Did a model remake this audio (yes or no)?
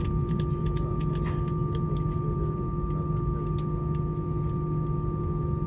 no